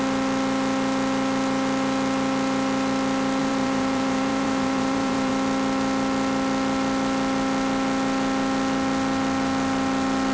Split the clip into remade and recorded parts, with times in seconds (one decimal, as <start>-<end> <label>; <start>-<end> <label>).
0.0-3.4 recorded; 3.4-5.3 remade; 5.3-10.3 recorded